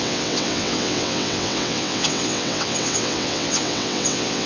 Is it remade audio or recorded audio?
remade